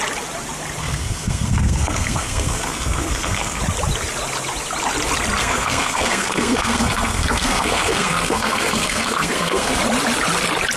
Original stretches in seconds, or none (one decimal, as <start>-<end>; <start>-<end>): 0.0-0.8; 3.6-5.4; 9.8-10.8